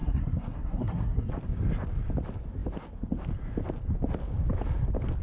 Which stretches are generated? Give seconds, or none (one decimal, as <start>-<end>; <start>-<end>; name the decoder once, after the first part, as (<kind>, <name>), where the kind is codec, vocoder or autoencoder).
0.0-1.3 (codec, SNAC)